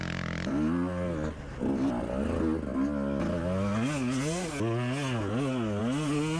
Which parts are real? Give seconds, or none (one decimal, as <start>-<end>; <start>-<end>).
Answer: 0.0-6.4